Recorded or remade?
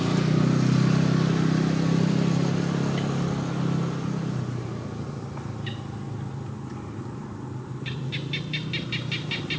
recorded